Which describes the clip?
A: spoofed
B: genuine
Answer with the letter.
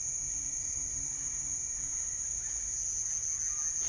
B